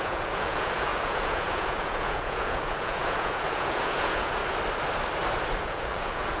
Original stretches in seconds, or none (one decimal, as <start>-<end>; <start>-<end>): 4.4-5.6